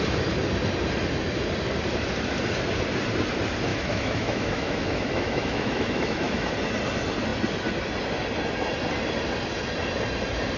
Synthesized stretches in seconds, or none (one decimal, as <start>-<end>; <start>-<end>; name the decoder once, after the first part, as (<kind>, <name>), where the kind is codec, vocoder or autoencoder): 3.7-6.5 (autoencoder, DAC-VAE)